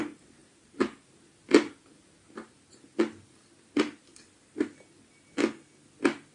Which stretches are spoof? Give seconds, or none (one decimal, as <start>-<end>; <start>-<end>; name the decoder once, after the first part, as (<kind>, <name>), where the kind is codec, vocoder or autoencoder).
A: 0.4-1.2 (vocoder, BigVGAN v2)